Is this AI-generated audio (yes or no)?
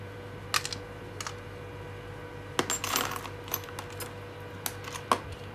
no